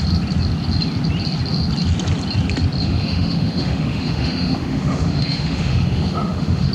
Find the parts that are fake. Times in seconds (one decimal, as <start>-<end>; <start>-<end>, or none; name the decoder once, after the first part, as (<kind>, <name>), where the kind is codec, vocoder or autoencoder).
2.8-6.7 (autoencoder, DAC-VAE)